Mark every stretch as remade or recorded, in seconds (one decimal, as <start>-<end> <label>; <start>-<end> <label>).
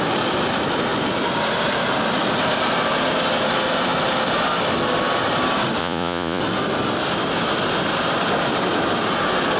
0.0-5.8 recorded; 5.8-6.4 remade; 6.4-9.6 recorded